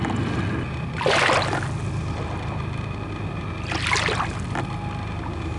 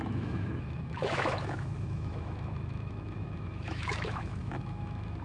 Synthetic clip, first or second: second